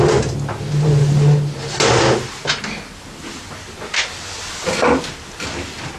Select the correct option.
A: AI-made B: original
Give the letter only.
B